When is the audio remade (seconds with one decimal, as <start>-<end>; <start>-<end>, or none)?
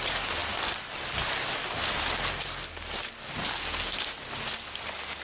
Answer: none